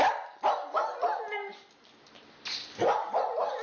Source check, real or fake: real